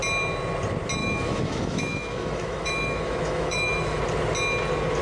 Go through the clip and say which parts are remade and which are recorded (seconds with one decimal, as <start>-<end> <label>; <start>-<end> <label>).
0.0-1.0 recorded; 1.0-4.0 remade; 4.0-5.0 recorded